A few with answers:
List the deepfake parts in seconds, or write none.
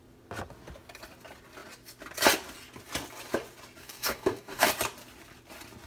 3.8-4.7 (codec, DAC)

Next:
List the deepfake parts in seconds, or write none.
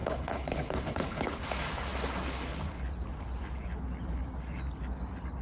0.0-1.4 (codec, HILCodec)